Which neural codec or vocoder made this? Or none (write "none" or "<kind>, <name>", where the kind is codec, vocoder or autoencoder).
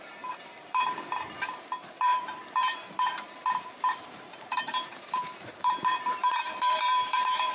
vocoder, BigVGAN v2